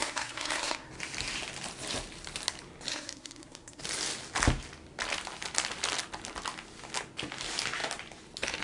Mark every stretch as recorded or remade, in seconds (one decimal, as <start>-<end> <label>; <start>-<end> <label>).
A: 0.0-0.9 remade; 0.9-2.9 recorded; 2.9-3.8 remade; 3.8-8.6 recorded